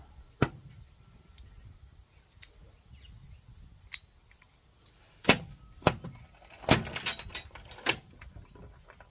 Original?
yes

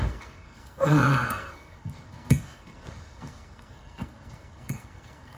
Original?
no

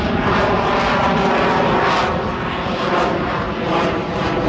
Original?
yes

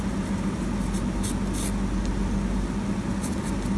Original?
yes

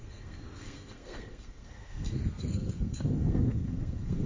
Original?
no